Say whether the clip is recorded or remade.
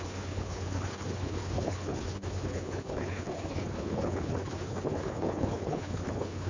remade